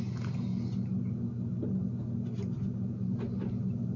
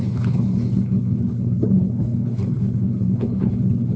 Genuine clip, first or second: first